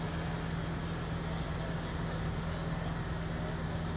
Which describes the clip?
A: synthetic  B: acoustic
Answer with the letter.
B